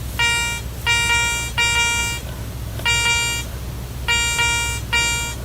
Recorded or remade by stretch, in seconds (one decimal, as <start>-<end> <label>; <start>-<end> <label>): 0.0-5.4 recorded